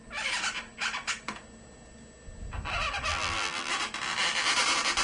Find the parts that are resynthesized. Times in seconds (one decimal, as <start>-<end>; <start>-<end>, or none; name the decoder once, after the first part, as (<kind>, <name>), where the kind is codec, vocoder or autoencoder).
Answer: 3.1-3.7 (vocoder, BigVGAN v2)